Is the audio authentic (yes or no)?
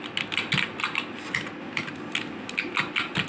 yes